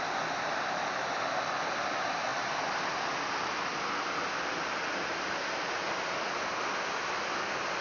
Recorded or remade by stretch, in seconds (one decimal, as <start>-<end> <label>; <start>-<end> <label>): 0.0-7.8 recorded